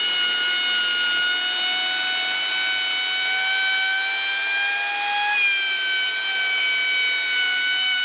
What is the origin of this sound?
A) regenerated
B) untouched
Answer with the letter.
B